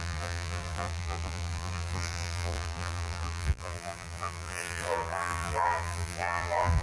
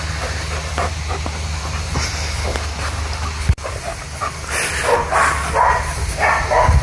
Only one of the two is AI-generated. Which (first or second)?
first